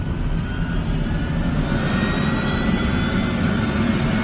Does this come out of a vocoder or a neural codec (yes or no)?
no